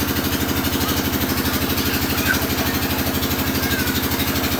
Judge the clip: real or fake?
real